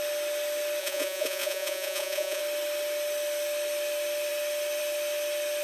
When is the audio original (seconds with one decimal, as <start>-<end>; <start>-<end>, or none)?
0.0-0.8; 2.4-5.6